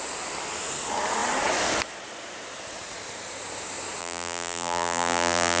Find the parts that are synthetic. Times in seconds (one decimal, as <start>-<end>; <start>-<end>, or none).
4.0-5.6